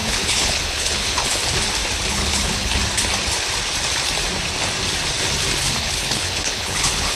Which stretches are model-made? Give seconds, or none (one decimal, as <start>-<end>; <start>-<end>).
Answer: 0.0-1.4; 2.1-2.8; 5.8-7.2